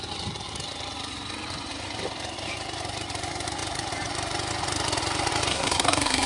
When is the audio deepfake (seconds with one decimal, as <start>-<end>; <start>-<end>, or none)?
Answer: 5.5-6.3